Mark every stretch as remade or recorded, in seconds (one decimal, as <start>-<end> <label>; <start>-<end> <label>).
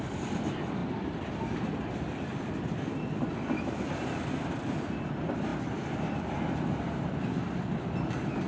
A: 0.0-8.5 recorded